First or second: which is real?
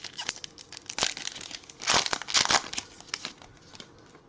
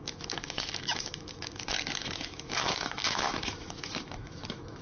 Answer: first